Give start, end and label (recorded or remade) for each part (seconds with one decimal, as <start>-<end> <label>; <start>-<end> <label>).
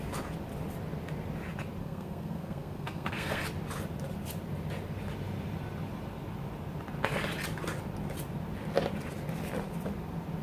0.0-1.8 recorded; 1.8-3.4 remade; 3.4-10.4 recorded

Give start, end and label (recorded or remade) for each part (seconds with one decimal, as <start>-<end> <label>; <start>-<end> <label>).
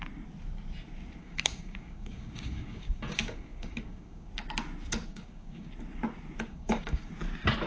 0.0-1.2 recorded; 1.2-4.3 remade; 4.3-5.1 recorded; 5.1-5.7 remade; 5.7-6.5 recorded; 6.5-7.1 remade; 7.1-7.7 recorded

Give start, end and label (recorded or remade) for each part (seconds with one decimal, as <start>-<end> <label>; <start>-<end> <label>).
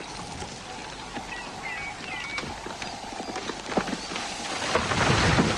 0.0-5.6 recorded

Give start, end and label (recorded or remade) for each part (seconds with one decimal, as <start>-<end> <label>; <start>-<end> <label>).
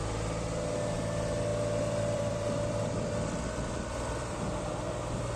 0.0-1.5 recorded; 1.5-4.7 remade; 4.7-5.4 recorded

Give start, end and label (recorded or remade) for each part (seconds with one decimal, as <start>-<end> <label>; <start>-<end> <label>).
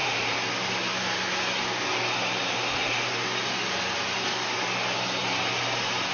0.0-0.5 remade; 0.5-6.1 recorded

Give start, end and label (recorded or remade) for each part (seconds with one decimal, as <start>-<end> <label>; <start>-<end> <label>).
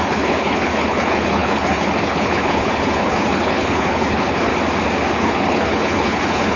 0.0-4.5 remade; 4.5-5.1 recorded; 5.1-6.6 remade